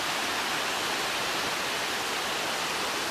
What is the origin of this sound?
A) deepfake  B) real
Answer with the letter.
B